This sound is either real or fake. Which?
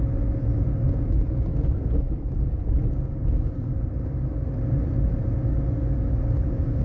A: real